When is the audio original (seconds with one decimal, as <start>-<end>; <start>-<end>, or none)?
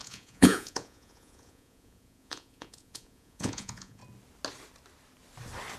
4.0-5.8